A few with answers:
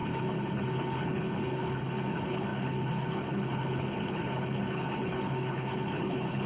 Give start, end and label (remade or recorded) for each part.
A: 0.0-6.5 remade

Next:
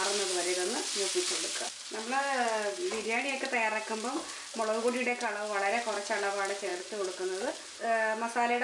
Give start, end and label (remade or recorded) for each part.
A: 0.0-6.7 recorded; 6.7-7.5 remade; 7.5-8.6 recorded

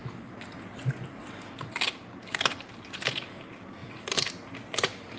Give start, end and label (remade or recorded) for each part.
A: 0.0-3.8 recorded; 3.8-4.3 remade; 4.3-5.2 recorded

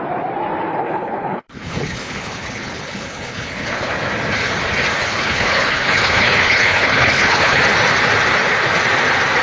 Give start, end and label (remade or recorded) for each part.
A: 0.0-0.7 recorded; 0.7-3.9 remade; 3.9-4.9 recorded; 4.9-7.6 remade; 7.6-9.4 recorded

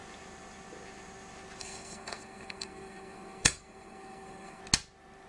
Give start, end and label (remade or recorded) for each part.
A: 0.0-1.6 recorded; 1.6-4.6 remade; 4.6-5.3 recorded

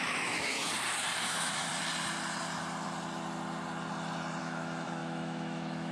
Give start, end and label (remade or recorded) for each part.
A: 0.0-0.7 remade; 0.7-1.2 recorded; 1.2-1.7 remade; 1.7-4.4 recorded; 4.4-5.9 remade

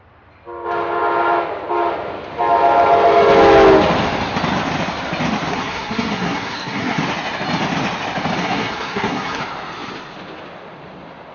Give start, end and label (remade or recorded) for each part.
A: 0.0-5.5 recorded; 5.5-7.0 remade; 7.0-8.4 recorded; 8.4-9.4 remade; 9.4-11.3 recorded

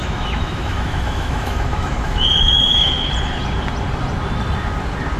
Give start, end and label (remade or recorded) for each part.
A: 0.0-3.1 remade; 3.1-5.2 recorded